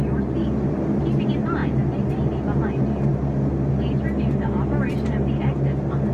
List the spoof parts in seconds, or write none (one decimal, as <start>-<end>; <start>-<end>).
none